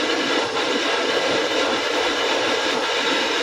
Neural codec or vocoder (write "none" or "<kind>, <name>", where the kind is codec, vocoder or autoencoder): vocoder, BigVGAN v2